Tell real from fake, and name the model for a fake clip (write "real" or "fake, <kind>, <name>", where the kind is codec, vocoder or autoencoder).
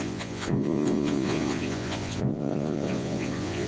fake, vocoder, Vocos